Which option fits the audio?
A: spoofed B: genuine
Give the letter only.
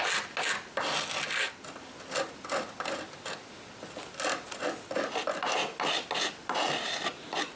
B